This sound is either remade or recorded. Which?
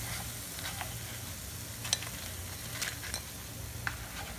recorded